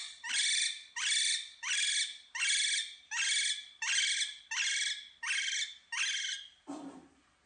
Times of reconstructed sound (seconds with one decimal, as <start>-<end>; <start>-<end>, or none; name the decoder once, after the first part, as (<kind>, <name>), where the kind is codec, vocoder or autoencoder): none